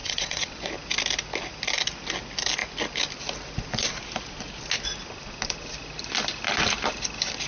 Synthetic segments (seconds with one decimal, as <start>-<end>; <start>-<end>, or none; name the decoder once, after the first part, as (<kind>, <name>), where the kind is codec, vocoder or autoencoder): 0.0-0.7 (vocoder, WaveNeXt)